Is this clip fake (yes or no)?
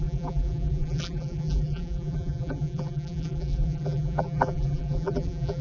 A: yes